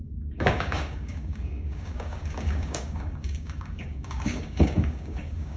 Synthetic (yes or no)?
yes